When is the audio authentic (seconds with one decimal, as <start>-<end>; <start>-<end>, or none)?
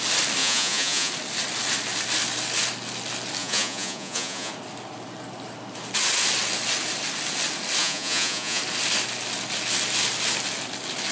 0.0-0.4; 1.1-3.4; 4.5-7.8; 8.6-11.1